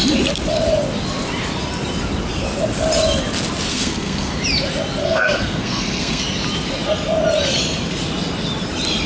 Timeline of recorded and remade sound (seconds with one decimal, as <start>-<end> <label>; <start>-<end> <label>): 0.0-3.7 recorded; 3.7-4.3 remade; 4.3-5.0 recorded; 5.0-6.2 remade; 6.2-9.1 recorded